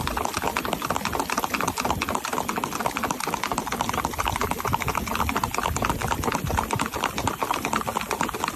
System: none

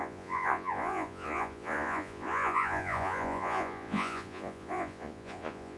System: vocoder, Vocos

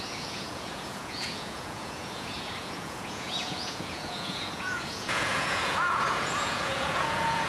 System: vocoder, Vocos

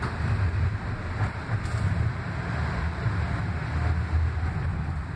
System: none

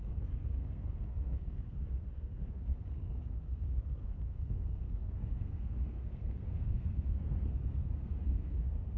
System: codec, SNAC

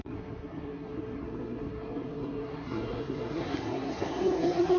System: codec, SNAC